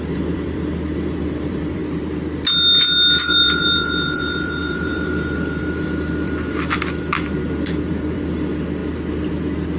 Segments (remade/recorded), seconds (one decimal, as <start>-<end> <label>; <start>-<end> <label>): 0.0-1.8 remade; 1.8-3.2 recorded; 3.2-8.8 remade; 8.8-9.8 recorded